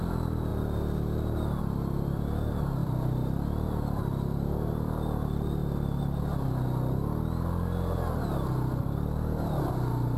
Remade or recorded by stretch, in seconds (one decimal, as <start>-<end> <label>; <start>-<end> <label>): 0.0-0.5 remade; 0.5-1.6 recorded; 1.6-5.6 remade; 5.6-8.8 recorded; 8.8-10.2 remade

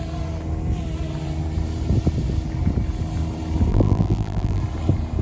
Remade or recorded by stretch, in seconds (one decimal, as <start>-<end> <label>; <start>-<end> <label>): 0.0-3.7 recorded; 3.7-4.6 remade; 4.6-5.2 recorded

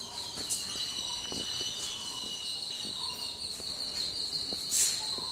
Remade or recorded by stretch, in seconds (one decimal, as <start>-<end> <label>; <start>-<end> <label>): 0.0-5.3 recorded